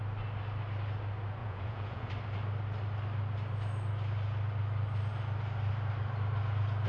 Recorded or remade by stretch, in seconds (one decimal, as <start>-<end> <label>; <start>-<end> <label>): 0.0-1.4 recorded; 1.4-2.1 remade; 2.1-6.9 recorded